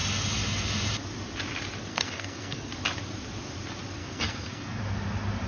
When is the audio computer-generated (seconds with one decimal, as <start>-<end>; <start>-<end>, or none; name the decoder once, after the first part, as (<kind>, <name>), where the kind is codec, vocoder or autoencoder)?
1.9-2.7 (codec, SNAC); 4.0-4.8